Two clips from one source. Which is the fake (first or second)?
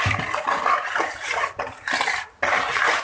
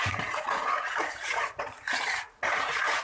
second